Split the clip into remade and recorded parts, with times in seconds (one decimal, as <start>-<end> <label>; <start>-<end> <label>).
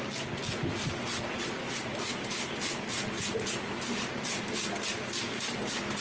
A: 0.0-1.9 recorded; 1.9-5.2 remade; 5.2-6.0 recorded